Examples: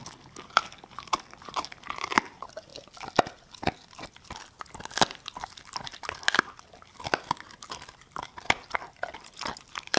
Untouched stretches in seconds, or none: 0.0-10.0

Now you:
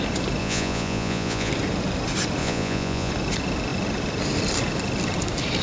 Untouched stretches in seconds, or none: 0.0-0.4; 1.5-2.4; 3.1-5.6

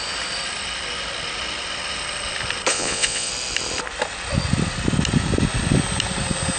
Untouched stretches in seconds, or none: 0.0-2.7; 3.3-6.6

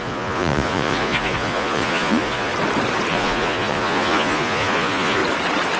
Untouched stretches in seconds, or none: 2.5-3.1; 5.2-5.8